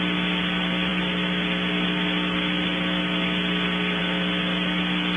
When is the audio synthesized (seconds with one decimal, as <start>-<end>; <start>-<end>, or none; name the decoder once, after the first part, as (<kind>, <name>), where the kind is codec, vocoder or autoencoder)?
none